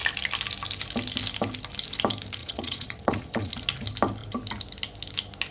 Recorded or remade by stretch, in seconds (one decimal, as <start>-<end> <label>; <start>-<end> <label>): 0.0-2.4 recorded; 2.4-3.5 remade; 3.5-5.5 recorded